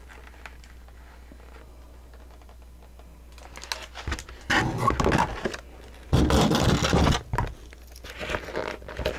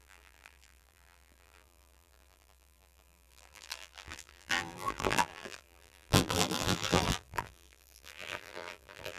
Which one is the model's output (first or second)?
second